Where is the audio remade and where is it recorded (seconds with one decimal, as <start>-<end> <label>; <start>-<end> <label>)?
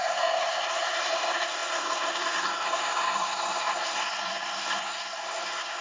0.0-5.8 remade